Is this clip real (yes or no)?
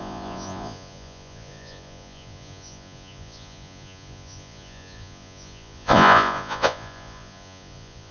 no